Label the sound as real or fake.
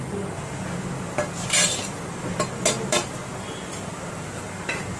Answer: real